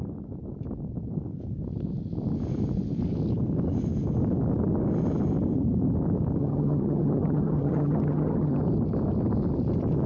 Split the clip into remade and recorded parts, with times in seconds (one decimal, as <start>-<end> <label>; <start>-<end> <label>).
0.0-6.4 recorded; 6.4-8.6 remade; 8.6-10.1 recorded